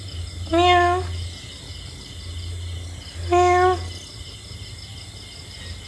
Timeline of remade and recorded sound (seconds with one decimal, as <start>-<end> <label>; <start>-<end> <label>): 0.0-5.9 recorded